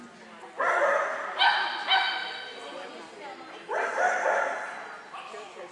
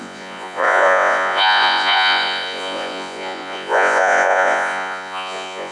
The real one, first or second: first